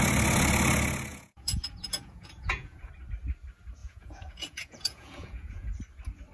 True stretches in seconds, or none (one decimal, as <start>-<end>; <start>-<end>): 0.0-1.1; 2.9-3.8; 5.7-6.3